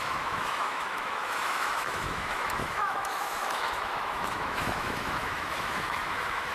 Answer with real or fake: fake